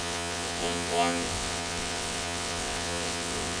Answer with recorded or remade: remade